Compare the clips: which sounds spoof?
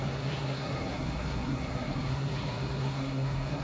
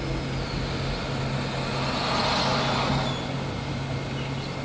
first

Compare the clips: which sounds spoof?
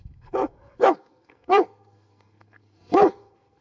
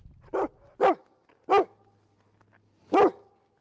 first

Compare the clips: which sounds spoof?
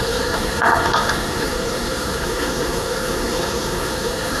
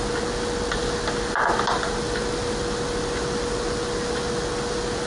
first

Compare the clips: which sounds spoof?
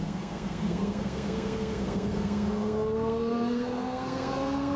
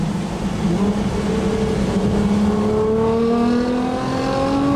first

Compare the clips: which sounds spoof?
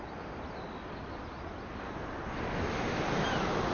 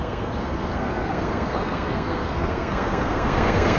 second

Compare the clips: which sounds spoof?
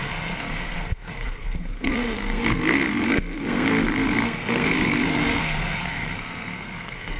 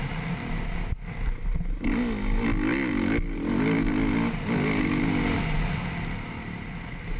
first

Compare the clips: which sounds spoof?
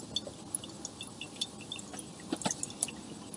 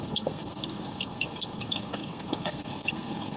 second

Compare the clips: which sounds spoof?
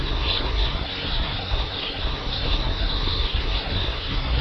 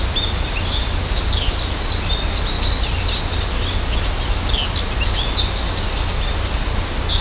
first